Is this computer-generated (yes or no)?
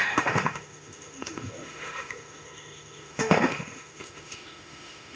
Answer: yes